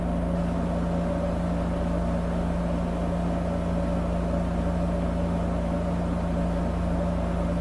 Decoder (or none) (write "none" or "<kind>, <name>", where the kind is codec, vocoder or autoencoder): none